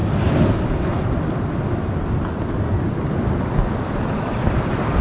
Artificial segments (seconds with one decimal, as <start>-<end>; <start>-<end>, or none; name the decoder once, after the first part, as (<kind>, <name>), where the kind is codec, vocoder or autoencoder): none